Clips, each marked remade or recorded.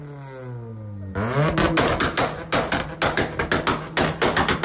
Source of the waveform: recorded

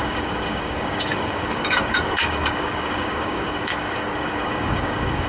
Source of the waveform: remade